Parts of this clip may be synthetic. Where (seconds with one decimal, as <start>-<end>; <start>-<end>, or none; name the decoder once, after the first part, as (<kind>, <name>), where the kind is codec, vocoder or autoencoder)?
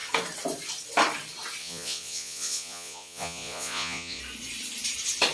1.6-4.2 (vocoder, Vocos)